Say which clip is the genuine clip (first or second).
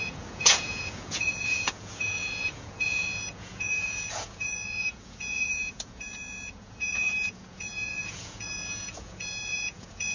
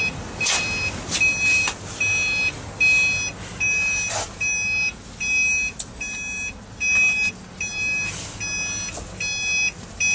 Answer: second